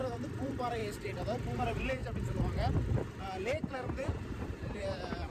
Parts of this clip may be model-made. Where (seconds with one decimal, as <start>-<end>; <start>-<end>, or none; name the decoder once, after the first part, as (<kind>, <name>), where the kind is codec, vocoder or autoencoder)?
0.0-0.8 (vocoder, BigVGAN v2); 1.6-2.0; 3.4-5.3